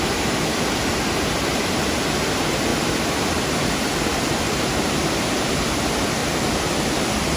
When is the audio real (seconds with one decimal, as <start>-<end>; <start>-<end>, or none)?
0.0-2.7; 4.8-6.2; 6.8-7.4